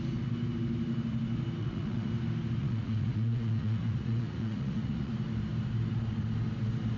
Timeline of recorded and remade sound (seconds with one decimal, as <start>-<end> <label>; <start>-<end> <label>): 0.0-1.6 recorded; 1.6-2.1 remade; 2.1-2.6 recorded; 2.6-5.1 remade; 5.1-7.0 recorded